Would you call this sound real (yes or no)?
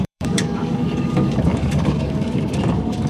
no